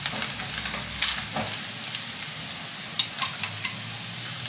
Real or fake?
real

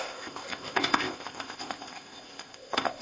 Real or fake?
fake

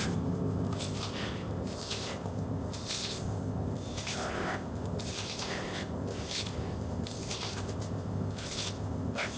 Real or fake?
fake